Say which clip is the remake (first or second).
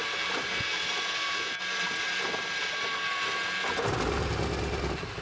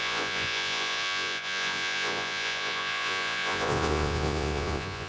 second